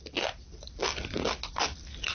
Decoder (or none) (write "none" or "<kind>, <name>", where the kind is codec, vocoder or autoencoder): none